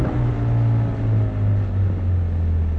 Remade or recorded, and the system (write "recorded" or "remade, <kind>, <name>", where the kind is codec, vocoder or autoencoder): recorded